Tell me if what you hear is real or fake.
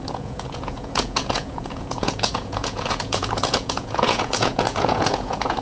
fake